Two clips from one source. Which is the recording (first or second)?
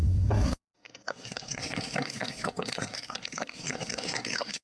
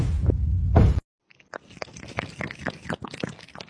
second